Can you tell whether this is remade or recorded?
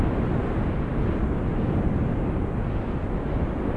recorded